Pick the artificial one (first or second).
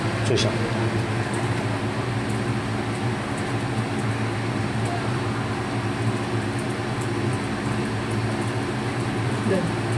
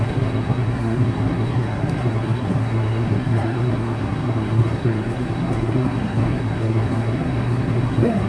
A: second